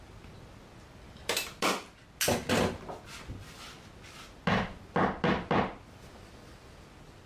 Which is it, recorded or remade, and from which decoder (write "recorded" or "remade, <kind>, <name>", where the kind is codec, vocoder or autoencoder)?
recorded